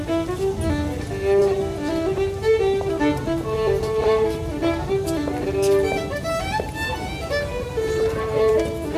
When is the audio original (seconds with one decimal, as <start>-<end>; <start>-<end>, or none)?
0.0-1.4; 6.0-7.5; 8.5-9.0